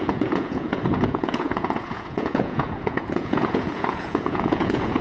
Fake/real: fake